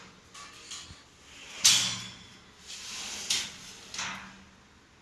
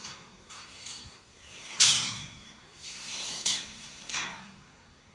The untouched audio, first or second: first